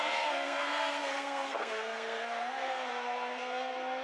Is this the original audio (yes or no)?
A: no